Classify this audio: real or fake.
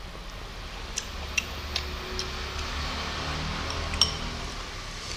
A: real